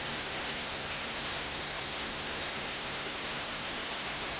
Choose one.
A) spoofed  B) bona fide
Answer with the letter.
A